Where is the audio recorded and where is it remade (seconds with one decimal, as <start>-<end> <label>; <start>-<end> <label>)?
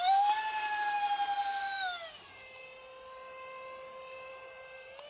0.0-5.1 recorded